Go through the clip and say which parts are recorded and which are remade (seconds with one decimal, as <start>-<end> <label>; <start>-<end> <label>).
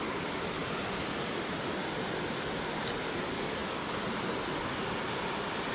0.0-5.7 recorded